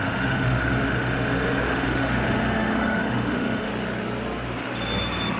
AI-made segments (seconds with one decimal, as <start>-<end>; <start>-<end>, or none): 0.0-3.7